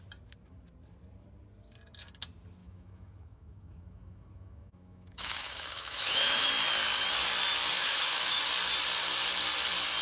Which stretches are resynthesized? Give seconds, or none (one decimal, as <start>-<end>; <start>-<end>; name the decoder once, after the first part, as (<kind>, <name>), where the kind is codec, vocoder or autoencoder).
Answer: 2.6-6.5 (autoencoder, DAC-VAE); 7.7-8.4